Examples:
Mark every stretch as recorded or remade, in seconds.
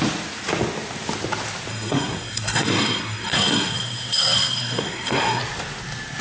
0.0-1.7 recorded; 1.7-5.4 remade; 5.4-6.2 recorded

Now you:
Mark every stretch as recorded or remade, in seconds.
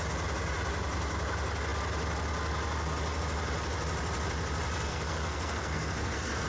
0.0-4.9 recorded; 4.9-6.5 remade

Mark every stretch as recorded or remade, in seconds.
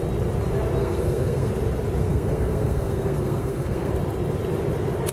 0.0-0.8 recorded; 0.8-1.5 remade; 1.5-2.0 recorded; 2.0-3.9 remade; 3.9-5.1 recorded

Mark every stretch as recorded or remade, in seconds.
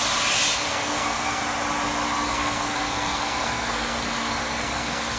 0.0-0.7 recorded; 0.7-1.4 remade; 1.4-2.3 recorded; 2.3-5.2 remade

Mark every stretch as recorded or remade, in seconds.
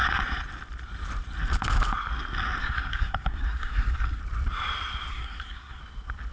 0.0-2.6 recorded; 2.6-4.2 remade; 4.2-5.1 recorded; 5.1-5.8 remade; 5.8-6.3 recorded